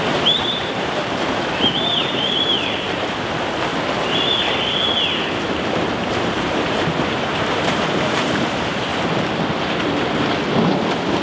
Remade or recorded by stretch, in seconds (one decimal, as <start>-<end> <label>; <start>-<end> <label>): 0.0-3.7 remade; 3.7-5.4 recorded; 5.4-8.9 remade; 8.9-11.2 recorded